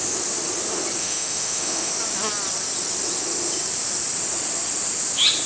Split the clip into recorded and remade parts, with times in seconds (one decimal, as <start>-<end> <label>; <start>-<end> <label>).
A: 0.0-1.0 recorded; 1.0-1.9 remade; 1.9-5.5 recorded